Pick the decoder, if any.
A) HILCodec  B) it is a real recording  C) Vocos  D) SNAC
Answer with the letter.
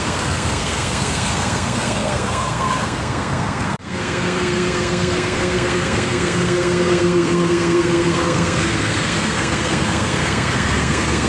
D